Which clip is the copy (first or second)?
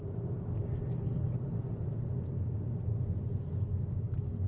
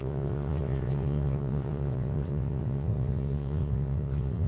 second